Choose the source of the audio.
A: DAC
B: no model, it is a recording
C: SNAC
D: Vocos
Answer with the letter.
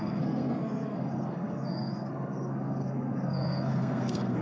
C